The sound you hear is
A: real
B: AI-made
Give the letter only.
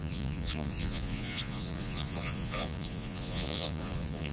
B